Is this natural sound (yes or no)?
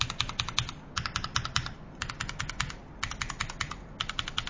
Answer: yes